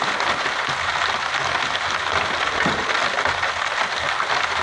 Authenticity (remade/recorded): recorded